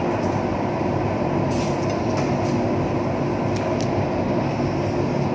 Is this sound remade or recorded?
recorded